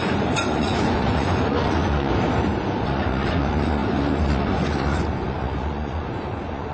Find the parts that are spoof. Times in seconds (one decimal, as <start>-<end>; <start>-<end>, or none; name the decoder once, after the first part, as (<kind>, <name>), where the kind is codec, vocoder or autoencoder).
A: 0.0-2.1 (vocoder, Vocos); 2.8-6.7